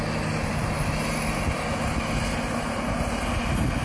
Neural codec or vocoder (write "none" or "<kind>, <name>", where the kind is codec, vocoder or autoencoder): none